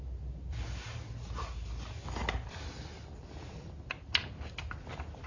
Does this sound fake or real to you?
real